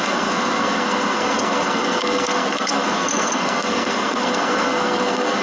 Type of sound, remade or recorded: remade